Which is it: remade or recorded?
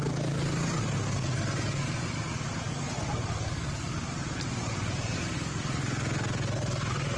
recorded